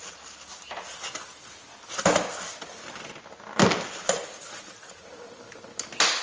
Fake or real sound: real